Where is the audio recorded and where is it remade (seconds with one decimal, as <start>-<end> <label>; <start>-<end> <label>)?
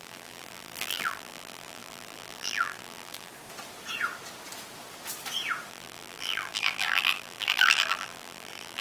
0.0-3.3 remade; 3.3-5.7 recorded; 5.7-8.8 remade